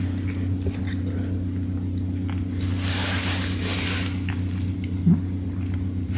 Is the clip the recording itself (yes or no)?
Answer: yes